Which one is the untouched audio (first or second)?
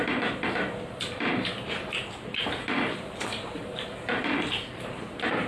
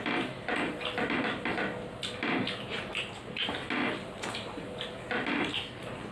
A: second